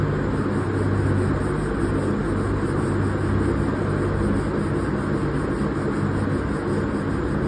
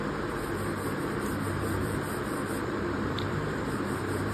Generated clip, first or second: second